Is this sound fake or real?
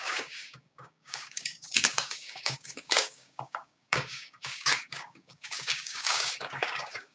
fake